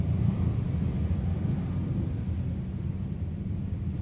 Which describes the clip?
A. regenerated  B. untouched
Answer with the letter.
B